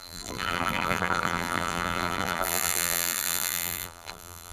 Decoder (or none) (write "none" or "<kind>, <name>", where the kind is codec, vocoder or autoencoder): vocoder, BigVGAN v2